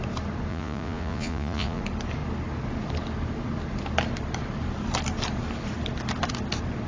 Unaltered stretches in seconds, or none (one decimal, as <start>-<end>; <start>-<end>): 0.0-0.5; 1.8-6.9